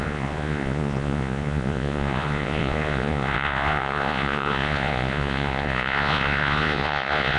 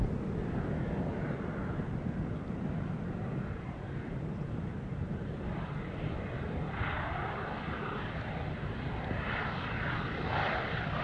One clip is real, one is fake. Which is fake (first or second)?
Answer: first